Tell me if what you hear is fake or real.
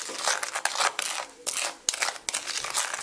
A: real